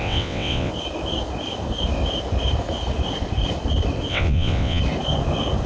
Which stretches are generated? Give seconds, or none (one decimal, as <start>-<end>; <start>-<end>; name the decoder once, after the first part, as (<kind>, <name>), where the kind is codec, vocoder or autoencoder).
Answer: 0.0-0.7 (vocoder, WaveNeXt); 4.1-4.8